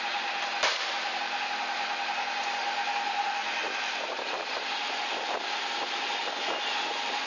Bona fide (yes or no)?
yes